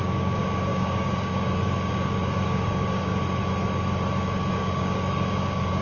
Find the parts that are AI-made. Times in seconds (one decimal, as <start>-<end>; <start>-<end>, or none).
0.0-3.1; 4.5-5.8

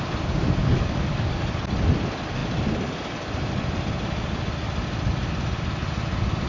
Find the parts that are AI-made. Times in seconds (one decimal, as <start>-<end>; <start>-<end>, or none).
0.6-1.4

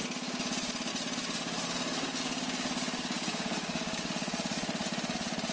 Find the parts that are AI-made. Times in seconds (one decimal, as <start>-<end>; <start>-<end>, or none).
3.3-4.1

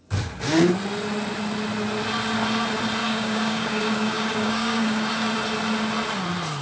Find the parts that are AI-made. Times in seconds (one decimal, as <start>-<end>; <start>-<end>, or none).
3.0-5.1

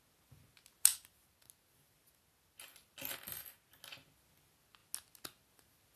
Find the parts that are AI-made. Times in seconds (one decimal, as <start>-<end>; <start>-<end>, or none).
none

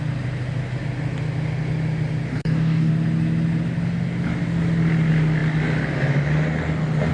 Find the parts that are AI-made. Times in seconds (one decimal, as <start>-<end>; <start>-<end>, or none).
2.3-2.9

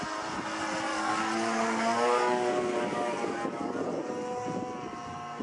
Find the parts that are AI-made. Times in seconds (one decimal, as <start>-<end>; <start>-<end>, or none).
0.9-4.1